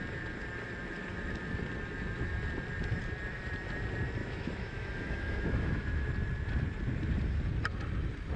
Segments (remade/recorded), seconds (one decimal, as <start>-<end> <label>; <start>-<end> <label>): 0.0-4.2 recorded; 4.2-6.1 remade; 6.1-8.4 recorded

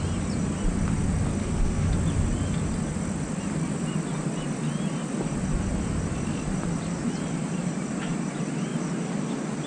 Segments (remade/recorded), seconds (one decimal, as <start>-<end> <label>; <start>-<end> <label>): 0.0-1.4 recorded; 1.4-1.9 remade; 1.9-9.7 recorded

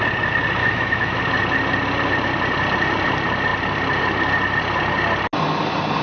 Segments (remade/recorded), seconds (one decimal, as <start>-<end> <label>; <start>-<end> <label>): 0.0-0.6 recorded; 0.6-1.2 remade; 1.2-6.0 recorded